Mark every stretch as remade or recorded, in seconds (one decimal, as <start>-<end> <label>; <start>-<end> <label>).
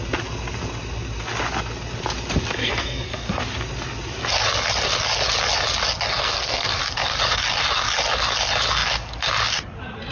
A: 0.0-2.6 recorded; 2.6-3.4 remade; 3.4-6.2 recorded; 6.2-6.8 remade; 6.8-10.1 recorded